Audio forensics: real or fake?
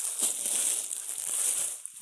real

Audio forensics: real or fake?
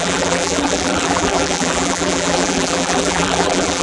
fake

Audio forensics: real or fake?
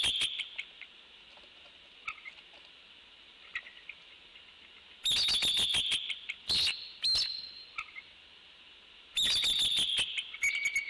real